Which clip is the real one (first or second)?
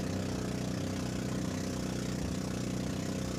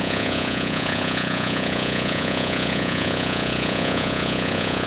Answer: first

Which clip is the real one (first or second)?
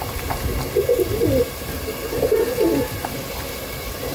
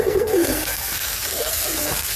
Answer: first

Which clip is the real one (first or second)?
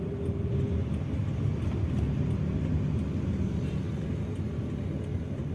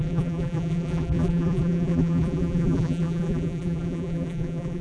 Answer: first